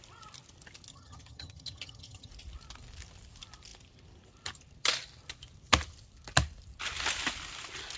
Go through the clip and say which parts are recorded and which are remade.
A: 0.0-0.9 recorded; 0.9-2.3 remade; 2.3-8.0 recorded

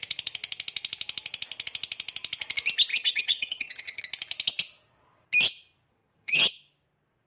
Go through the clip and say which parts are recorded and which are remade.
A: 0.0-2.9 recorded; 2.9-4.0 remade; 4.0-5.9 recorded; 5.9-6.5 remade; 6.5-7.3 recorded

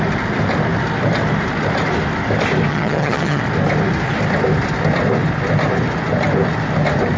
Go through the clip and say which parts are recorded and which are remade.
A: 0.0-2.7 recorded; 2.7-3.4 remade; 3.4-7.2 recorded

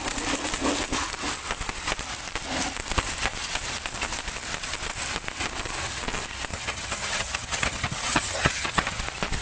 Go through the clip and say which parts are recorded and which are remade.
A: 0.0-6.5 recorded; 6.5-9.0 remade; 9.0-9.4 recorded

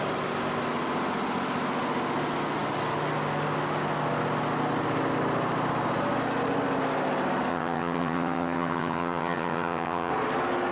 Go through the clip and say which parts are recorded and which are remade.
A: 0.0-7.5 recorded; 7.5-10.1 remade; 10.1-10.7 recorded